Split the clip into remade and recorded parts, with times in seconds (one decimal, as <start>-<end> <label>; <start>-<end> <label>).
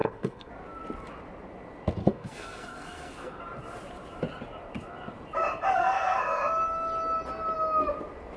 0.0-0.5 remade; 0.5-2.0 recorded; 2.0-3.4 remade; 3.4-5.8 recorded; 5.8-6.4 remade; 6.4-8.4 recorded